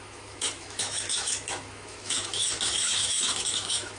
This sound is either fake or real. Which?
fake